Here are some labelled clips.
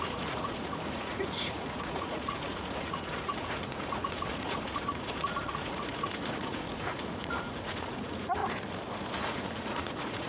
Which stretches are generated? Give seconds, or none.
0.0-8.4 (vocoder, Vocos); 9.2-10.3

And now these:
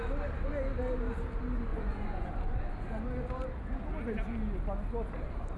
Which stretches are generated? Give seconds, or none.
1.7-2.3 (vocoder, Vocos)

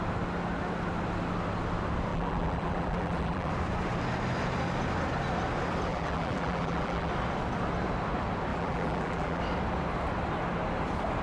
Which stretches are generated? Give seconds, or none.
2.1-3.5 (vocoder, BigVGAN v2); 5.9-7.1; 8.5-9.4

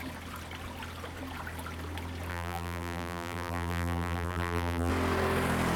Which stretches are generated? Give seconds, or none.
2.3-4.9 (vocoder, BigVGAN v2)

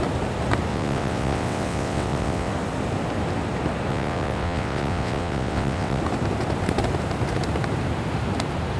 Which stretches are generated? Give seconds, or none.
0.7-2.5 (vocoder, WaveNeXt); 3.9-6.0

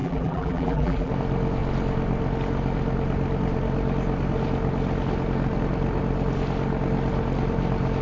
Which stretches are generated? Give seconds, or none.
0.0-1.1 (vocoder, BigVGAN v2)

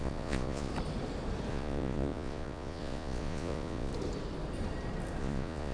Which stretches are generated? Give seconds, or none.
0.0-0.7 (vocoder, Vocos); 1.5-3.9; 5.2-5.7

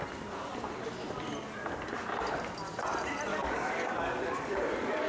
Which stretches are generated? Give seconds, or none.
3.3-5.1 (codec, DAC)